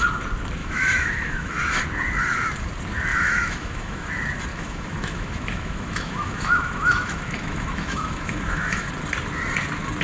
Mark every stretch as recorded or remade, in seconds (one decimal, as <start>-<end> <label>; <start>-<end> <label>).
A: 0.0-0.6 recorded; 0.6-1.8 remade; 1.8-3.1 recorded; 3.1-4.1 remade; 4.1-4.5 recorded; 4.5-8.9 remade; 8.9-10.0 recorded